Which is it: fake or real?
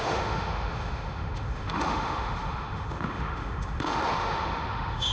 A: fake